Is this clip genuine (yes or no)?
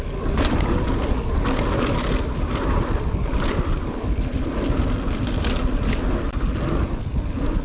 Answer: yes